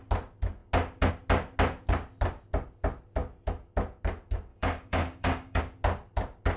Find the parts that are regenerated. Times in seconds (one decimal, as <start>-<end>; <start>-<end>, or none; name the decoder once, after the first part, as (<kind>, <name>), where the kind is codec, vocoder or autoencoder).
4.5-5.6 (codec, DAC)